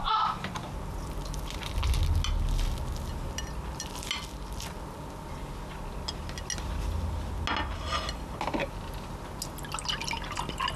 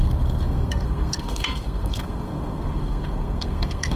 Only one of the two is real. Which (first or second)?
first